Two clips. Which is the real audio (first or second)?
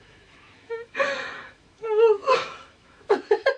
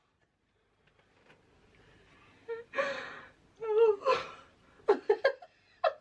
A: second